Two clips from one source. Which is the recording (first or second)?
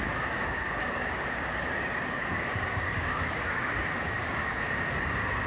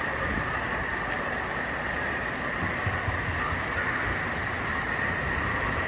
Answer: second